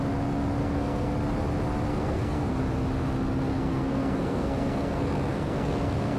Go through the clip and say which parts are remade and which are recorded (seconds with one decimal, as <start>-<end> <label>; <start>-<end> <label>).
0.0-0.6 recorded; 0.6-1.1 remade; 1.1-1.9 recorded; 1.9-2.6 remade; 2.6-3.5 recorded; 3.5-6.2 remade

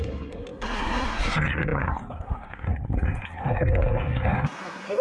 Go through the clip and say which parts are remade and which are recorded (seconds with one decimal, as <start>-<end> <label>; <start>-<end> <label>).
0.0-5.0 remade

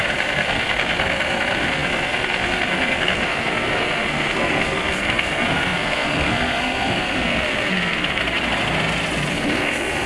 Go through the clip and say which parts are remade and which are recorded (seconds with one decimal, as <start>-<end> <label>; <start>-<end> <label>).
0.0-8.2 remade; 8.2-9.3 recorded; 9.3-10.1 remade

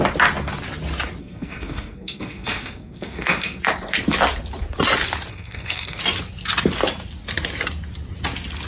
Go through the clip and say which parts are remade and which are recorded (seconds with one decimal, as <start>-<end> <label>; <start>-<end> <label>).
0.0-1.2 recorded; 1.2-3.6 remade; 3.6-5.3 recorded; 5.3-6.0 remade; 6.0-8.7 recorded

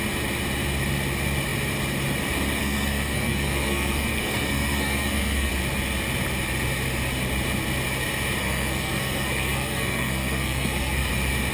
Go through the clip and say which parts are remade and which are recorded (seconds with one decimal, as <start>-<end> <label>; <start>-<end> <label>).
0.0-2.6 recorded; 2.6-5.5 remade; 5.5-8.4 recorded; 8.4-11.1 remade; 11.1-11.5 recorded

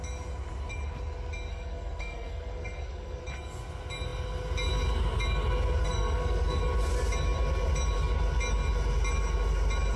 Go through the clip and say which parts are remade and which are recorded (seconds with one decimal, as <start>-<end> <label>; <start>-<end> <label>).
0.0-1.5 recorded; 1.5-3.2 remade; 3.2-5.8 recorded; 5.8-6.6 remade; 6.6-10.0 recorded

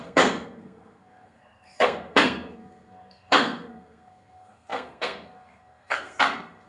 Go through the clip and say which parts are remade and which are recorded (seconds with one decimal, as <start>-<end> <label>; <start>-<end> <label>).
0.0-6.7 remade

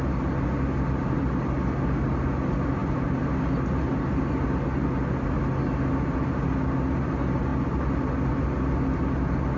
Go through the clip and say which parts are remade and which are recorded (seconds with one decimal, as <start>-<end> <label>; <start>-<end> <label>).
0.0-9.6 recorded